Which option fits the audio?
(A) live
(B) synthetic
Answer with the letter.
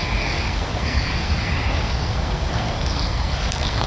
B